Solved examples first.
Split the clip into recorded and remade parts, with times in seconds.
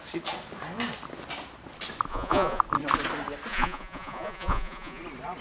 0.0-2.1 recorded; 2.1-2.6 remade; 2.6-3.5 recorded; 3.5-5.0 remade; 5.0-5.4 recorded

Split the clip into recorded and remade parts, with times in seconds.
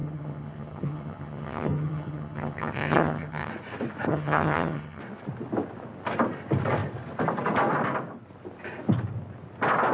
0.0-3.5 remade; 3.5-4.1 recorded; 4.1-5.0 remade; 5.0-9.9 recorded